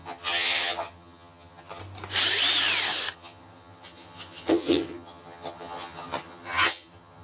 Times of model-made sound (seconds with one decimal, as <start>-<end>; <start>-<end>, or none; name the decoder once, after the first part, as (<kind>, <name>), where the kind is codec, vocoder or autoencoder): 0.0-1.8 (vocoder, HiFi-GAN); 3.1-7.2